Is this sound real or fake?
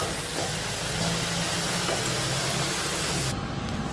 real